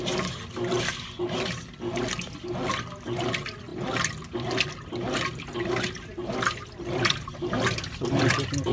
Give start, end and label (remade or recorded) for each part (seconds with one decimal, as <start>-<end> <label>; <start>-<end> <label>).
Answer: 0.0-8.7 recorded